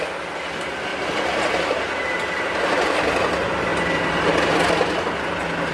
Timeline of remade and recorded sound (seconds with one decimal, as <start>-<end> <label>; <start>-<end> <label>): 0.0-5.7 recorded